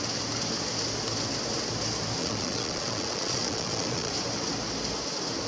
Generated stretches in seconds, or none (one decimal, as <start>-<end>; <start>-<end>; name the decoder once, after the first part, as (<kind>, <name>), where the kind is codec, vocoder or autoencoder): 2.2-4.1 (vocoder, Vocos)